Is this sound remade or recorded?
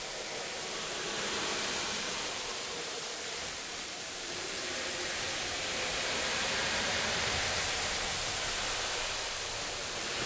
remade